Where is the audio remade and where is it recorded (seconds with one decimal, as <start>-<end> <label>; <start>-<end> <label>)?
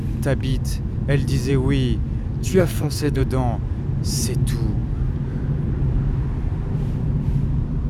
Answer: 0.0-2.4 recorded; 2.4-3.2 remade; 3.2-7.9 recorded